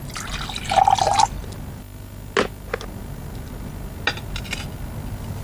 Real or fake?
real